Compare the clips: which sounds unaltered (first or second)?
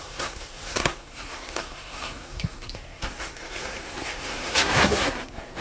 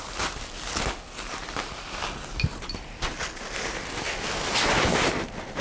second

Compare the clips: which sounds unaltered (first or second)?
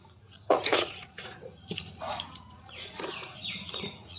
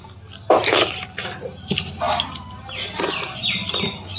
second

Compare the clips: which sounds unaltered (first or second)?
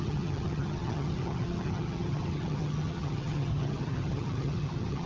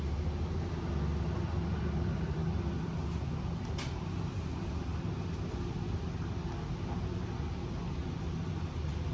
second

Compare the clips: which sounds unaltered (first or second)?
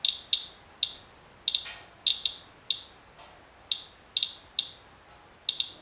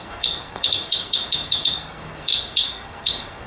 first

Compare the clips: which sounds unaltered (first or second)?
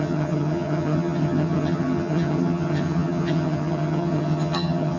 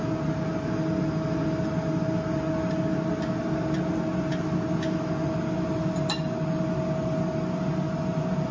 second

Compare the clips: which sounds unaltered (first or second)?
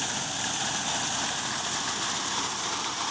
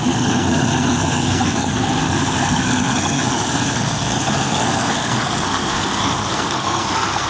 first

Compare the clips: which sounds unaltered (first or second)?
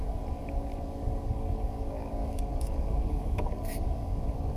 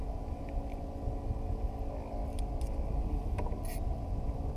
second